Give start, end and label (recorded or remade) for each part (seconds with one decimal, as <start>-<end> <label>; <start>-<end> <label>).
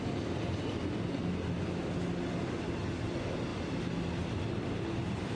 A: 0.0-5.4 recorded